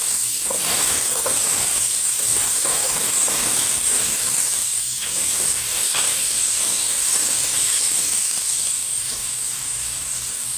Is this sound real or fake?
fake